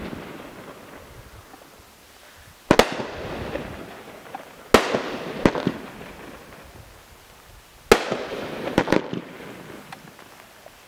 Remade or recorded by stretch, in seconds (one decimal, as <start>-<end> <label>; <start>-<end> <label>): 0.0-8.3 recorded; 8.3-9.0 remade; 9.0-10.9 recorded